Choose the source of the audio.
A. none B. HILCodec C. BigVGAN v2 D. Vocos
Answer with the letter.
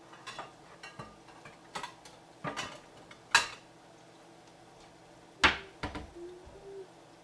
A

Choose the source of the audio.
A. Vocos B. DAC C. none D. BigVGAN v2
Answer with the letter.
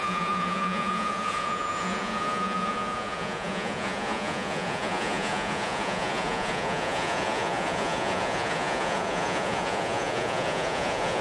A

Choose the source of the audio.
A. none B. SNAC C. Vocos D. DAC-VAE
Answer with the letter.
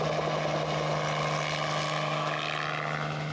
A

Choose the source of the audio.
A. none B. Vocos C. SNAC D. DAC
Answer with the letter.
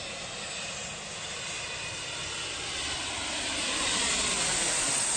A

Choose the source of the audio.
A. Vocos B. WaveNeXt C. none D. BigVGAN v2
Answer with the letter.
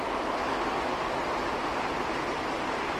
C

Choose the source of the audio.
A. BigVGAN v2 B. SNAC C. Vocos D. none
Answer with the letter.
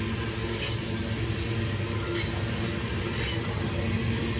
D